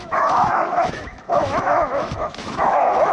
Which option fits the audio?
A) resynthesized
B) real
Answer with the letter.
A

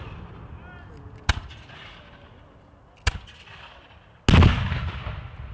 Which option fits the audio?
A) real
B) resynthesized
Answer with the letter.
A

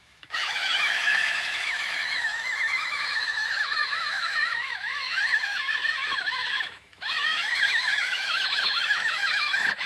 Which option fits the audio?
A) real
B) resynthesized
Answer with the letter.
B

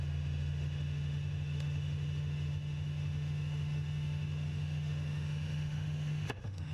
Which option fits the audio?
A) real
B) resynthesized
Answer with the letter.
B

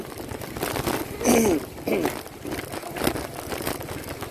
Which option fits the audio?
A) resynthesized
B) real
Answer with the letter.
B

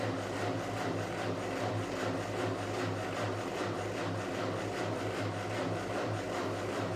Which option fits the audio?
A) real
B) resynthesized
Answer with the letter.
A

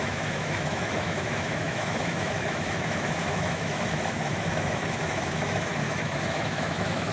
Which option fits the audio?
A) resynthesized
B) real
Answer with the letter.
A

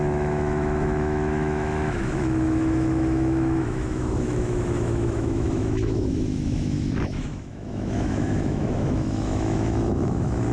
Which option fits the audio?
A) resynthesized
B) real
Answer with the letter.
A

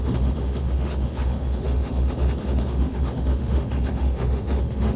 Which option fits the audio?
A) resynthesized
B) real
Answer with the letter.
A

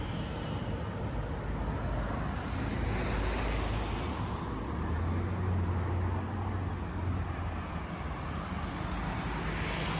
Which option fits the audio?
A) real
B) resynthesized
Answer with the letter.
A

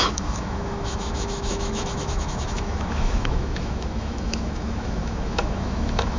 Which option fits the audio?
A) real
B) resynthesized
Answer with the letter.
B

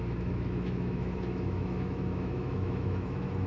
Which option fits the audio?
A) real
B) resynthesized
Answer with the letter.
B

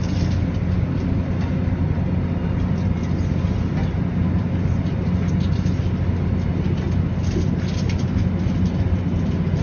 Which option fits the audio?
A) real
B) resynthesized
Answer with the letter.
A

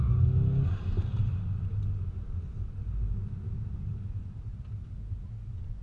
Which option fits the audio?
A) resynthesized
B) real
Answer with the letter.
B